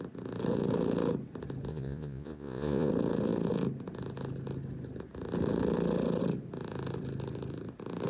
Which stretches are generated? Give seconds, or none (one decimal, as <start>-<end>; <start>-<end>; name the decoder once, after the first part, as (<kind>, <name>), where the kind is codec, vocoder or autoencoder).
1.7-2.9 (vocoder, Vocos)